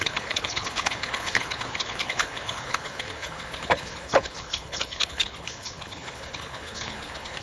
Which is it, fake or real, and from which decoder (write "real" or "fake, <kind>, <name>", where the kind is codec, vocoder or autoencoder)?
fake, codec, HILCodec